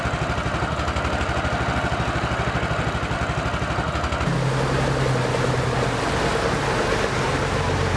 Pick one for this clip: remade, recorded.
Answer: recorded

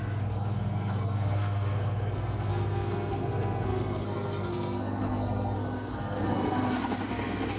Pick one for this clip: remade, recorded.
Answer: remade